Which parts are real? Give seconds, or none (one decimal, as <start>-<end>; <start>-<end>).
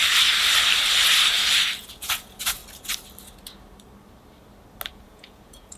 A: 0.0-1.8; 2.6-4.9